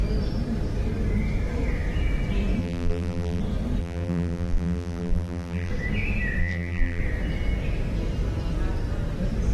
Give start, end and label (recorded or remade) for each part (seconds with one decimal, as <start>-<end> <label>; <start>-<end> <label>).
0.0-2.6 recorded; 2.6-3.4 remade; 3.4-3.8 recorded; 3.8-5.7 remade; 5.7-6.4 recorded; 6.4-7.0 remade; 7.0-9.5 recorded

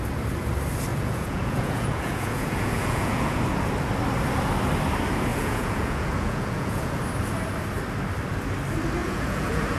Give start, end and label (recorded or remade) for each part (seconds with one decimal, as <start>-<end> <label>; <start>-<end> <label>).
0.0-0.9 recorded; 0.9-3.4 remade; 3.4-5.3 recorded; 5.3-7.0 remade; 7.0-9.0 recorded; 9.0-9.8 remade

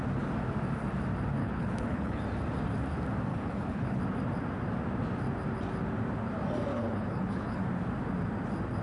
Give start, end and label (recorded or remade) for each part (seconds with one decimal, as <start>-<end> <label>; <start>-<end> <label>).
0.0-1.4 recorded; 1.4-2.2 remade; 2.2-3.3 recorded; 3.3-4.0 remade; 4.0-6.7 recorded; 6.7-7.6 remade; 7.6-8.8 recorded

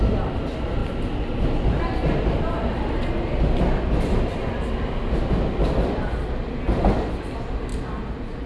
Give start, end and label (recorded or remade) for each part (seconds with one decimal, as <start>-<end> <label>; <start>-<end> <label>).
0.0-8.5 recorded

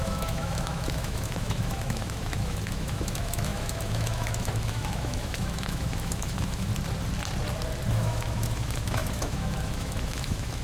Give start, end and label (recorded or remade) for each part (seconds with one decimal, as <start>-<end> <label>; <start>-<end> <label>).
0.0-6.7 remade; 6.7-7.9 recorded; 7.9-10.6 remade

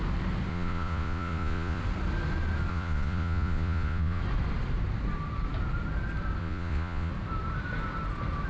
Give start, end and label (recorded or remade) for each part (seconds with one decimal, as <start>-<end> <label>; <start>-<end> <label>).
0.0-0.5 recorded; 0.5-1.8 remade; 1.8-2.7 recorded; 2.7-4.2 remade; 4.2-6.4 recorded; 6.4-7.1 remade; 7.1-8.5 recorded

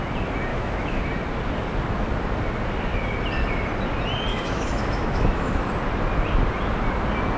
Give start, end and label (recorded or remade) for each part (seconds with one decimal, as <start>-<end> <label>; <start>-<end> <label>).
0.0-0.5 recorded; 0.5-1.0 remade; 1.0-4.3 recorded; 4.3-5.7 remade; 5.7-7.4 recorded